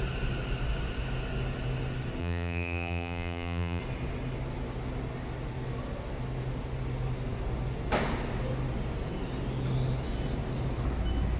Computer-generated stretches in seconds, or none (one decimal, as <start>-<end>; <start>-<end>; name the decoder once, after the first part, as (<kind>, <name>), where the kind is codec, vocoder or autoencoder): 2.2-3.8 (vocoder, BigVGAN v2)